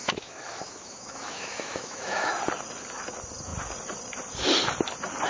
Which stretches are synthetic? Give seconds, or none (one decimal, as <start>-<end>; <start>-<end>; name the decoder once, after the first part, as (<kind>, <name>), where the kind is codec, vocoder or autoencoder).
0.0-2.3 (autoencoder, DAC-VAE)